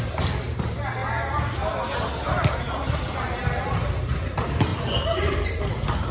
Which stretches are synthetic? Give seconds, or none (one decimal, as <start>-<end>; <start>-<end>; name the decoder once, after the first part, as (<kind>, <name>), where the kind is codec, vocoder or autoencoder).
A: 0.0-1.0 (vocoder, BigVGAN v2); 2.6-6.1